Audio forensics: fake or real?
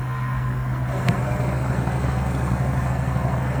fake